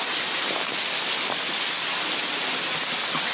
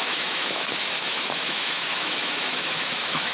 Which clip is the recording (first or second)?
first